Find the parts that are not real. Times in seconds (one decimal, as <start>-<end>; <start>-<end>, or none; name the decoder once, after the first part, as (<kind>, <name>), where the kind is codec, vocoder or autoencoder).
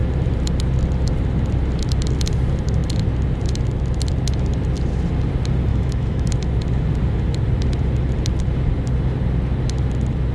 5.7-6.3 (autoencoder, DAC-VAE)